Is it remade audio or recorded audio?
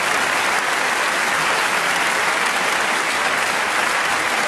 recorded